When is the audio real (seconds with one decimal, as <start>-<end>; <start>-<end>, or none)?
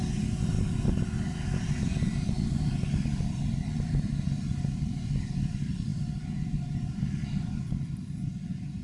0.0-8.8